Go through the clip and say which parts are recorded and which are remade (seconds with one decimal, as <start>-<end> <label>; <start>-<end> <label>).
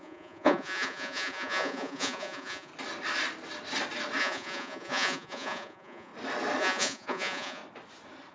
0.0-2.7 remade; 2.7-4.2 recorded; 4.2-6.1 remade; 6.1-6.6 recorded; 6.6-7.6 remade; 7.6-8.3 recorded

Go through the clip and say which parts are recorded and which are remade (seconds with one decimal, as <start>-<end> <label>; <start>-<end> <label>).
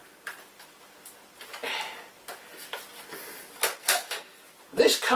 0.0-3.8 recorded; 3.8-4.4 remade; 4.4-5.1 recorded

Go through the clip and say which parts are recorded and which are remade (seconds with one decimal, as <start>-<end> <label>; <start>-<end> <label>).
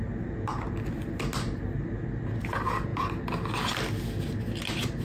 0.0-5.0 recorded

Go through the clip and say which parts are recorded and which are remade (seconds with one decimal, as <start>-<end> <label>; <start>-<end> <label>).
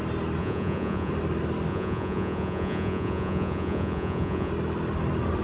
0.0-0.4 recorded; 0.4-1.1 remade; 1.1-1.7 recorded; 1.7-4.5 remade; 4.5-5.4 recorded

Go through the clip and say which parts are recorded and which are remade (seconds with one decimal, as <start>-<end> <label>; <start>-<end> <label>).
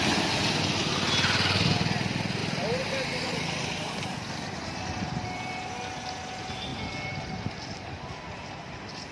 0.0-2.4 recorded; 2.4-5.1 remade; 5.1-9.1 recorded